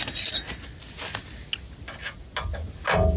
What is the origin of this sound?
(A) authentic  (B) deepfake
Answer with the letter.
A